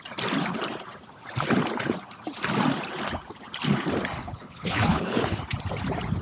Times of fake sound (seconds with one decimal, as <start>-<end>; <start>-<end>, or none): 4.2-5.4